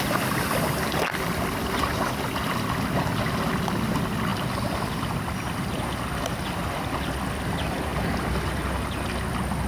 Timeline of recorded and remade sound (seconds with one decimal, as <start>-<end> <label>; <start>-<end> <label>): 0.0-9.7 recorded